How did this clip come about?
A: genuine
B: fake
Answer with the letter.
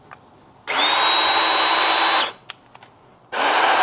A